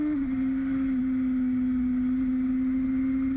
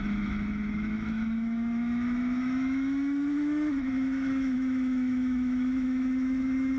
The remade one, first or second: second